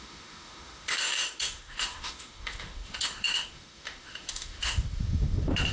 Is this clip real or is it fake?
fake